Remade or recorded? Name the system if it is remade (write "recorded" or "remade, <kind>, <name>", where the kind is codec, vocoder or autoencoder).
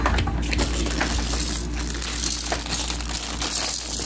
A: recorded